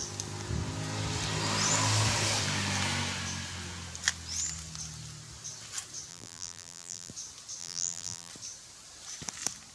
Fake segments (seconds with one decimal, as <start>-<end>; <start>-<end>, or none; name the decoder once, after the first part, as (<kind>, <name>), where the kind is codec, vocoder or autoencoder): 6.1-7.1 (vocoder, BigVGAN v2); 7.6-8.3